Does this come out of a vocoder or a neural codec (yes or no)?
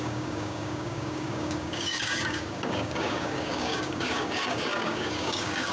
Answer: yes